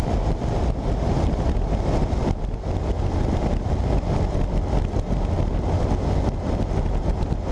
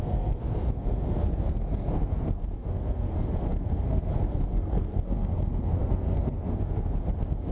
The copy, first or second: second